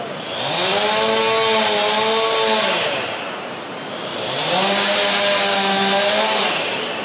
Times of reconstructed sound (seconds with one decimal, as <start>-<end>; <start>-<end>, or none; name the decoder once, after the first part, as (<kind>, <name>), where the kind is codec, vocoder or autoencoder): none